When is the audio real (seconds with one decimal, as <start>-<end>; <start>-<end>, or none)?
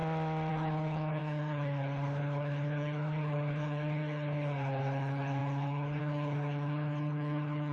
0.0-0.5